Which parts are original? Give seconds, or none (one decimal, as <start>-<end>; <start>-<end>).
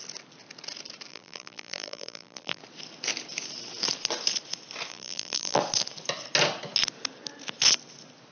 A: 0.0-1.1; 2.6-4.9; 5.6-8.3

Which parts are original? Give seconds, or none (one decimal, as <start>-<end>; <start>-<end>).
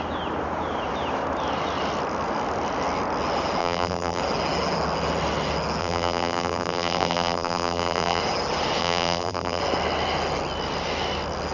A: 0.0-3.6; 4.2-5.8; 8.2-8.8; 9.6-11.5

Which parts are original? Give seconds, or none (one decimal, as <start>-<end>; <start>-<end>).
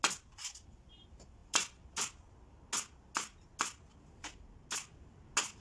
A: 0.0-5.6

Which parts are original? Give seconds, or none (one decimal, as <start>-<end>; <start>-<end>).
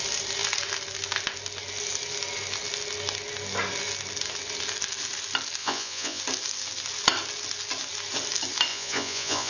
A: 0.0-5.6; 6.2-8.7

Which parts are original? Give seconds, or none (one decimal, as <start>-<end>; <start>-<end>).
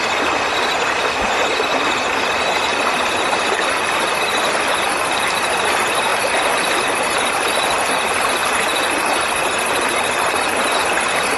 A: 0.0-2.7; 4.7-6.1; 7.9-11.4